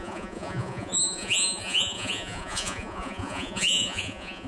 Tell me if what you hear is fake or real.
fake